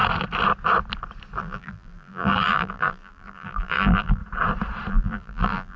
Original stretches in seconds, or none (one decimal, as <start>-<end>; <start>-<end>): 0.0-1.4; 4.2-4.9